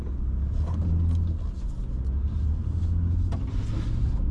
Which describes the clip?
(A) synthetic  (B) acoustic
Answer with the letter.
B